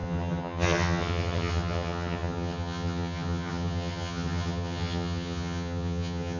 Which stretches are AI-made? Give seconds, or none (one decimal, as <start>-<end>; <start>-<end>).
0.0-6.4